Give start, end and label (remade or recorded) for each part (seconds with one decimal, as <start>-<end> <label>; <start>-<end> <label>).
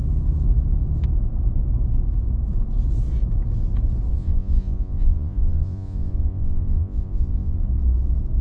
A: 0.0-4.1 recorded; 4.1-7.6 remade; 7.6-8.4 recorded